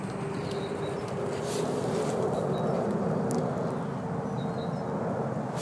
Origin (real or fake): real